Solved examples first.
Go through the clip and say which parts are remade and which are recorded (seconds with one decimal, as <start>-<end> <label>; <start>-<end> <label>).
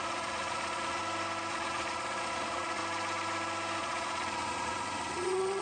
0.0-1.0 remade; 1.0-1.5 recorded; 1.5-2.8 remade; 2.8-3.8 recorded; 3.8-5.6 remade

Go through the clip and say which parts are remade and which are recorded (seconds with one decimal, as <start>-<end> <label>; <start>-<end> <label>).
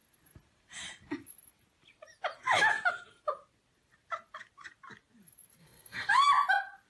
0.0-5.6 recorded; 5.6-6.1 remade; 6.1-6.9 recorded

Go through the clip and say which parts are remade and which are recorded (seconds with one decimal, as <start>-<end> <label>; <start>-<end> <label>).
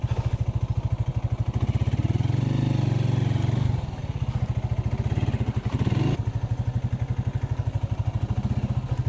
0.0-9.1 recorded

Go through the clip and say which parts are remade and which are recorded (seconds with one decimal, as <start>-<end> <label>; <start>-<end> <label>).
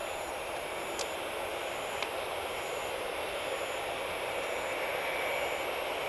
0.0-1.5 recorded; 1.5-3.1 remade; 3.1-6.1 recorded